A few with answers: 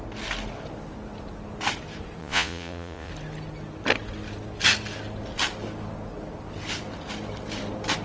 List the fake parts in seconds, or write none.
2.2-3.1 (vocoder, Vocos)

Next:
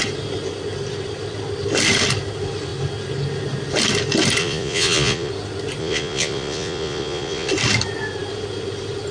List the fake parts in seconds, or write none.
4.4-5.3 (vocoder, Vocos); 5.8-7.5

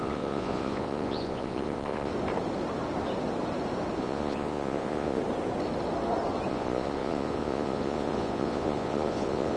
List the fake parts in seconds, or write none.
0.0-2.1 (vocoder, Vocos); 4.0-5.2; 6.5-9.6

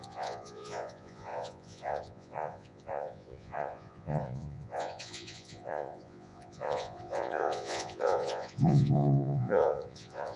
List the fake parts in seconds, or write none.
0.0-10.4 (vocoder, Vocos)

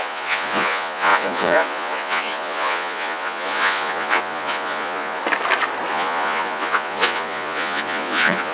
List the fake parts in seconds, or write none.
0.0-5.2 (vocoder, Vocos); 5.9-8.5

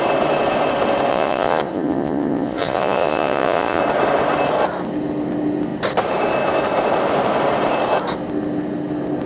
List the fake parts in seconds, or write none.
1.1-3.8 (vocoder, Vocos)

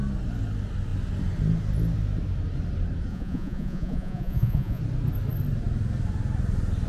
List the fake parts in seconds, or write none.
3.1-4.8 (vocoder, Vocos)